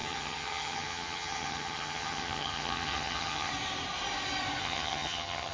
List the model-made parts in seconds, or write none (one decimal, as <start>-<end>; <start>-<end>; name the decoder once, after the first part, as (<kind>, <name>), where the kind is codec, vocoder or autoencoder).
0.0-3.5 (vocoder, HiFi-GAN); 4.6-5.5